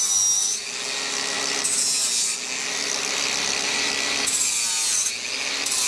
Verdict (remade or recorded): recorded